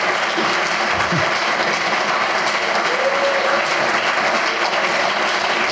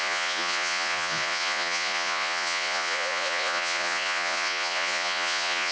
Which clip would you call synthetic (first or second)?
second